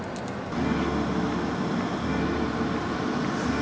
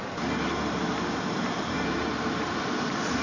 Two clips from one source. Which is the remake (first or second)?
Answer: second